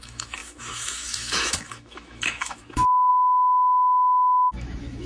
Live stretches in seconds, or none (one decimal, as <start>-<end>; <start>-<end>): none